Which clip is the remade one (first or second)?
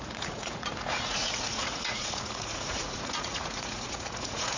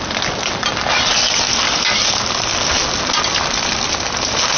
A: first